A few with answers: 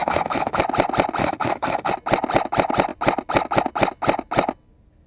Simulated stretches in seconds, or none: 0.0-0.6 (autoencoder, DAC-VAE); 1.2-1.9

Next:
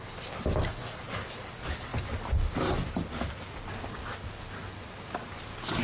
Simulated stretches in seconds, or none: none